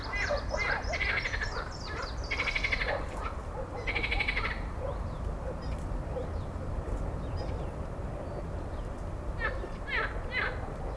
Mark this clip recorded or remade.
remade